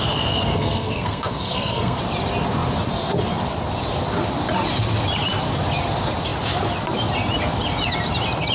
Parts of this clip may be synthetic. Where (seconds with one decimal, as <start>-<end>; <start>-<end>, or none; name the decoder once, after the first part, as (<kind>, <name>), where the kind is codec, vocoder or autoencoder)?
0.5-2.0 (codec, SNAC)